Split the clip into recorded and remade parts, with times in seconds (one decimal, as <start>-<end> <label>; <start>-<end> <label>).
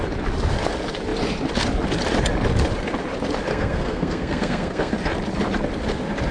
0.0-3.5 recorded; 3.5-4.9 remade; 4.9-6.3 recorded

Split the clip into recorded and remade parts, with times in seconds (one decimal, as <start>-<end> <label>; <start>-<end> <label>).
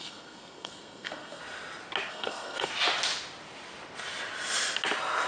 0.0-1.4 remade; 1.4-2.1 recorded; 2.1-2.7 remade; 2.7-5.3 recorded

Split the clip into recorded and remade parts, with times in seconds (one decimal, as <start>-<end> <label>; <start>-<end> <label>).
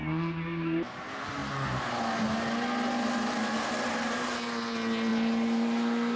0.0-6.2 recorded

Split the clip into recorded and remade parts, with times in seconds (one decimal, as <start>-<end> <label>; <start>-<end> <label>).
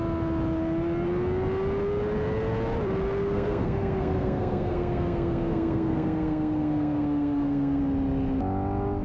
0.0-3.2 recorded; 3.2-7.8 remade; 7.8-9.0 recorded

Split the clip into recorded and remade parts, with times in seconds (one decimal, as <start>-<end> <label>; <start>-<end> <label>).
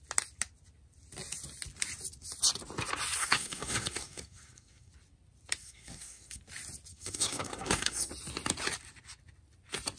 0.0-3.2 recorded; 3.2-4.9 remade; 4.9-5.6 recorded; 5.6-6.4 remade; 6.4-6.9 recorded; 6.9-8.1 remade; 8.1-10.0 recorded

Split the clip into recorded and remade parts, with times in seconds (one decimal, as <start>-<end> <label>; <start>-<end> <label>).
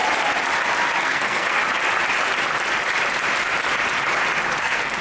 0.0-1.0 recorded; 1.0-1.6 remade; 1.6-4.6 recorded; 4.6-5.0 remade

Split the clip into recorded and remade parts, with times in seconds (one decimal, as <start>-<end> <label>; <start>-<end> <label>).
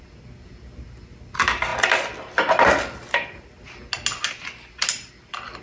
0.0-5.6 recorded